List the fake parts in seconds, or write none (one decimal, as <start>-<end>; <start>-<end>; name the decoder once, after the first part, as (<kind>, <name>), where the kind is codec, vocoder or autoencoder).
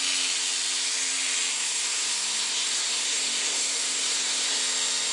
1.5-4.6 (codec, SNAC)